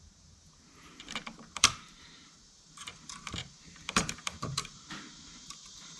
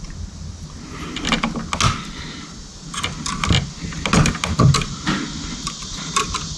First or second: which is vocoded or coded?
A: first